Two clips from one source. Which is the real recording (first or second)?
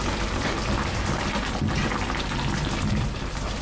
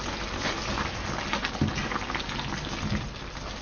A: second